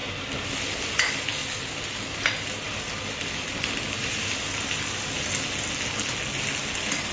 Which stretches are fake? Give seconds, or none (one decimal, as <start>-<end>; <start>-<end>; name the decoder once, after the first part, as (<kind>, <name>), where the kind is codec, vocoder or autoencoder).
1.4-5.4 (vocoder, BigVGAN v2)